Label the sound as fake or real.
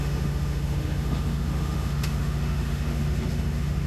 fake